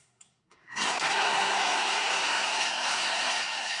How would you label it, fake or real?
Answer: fake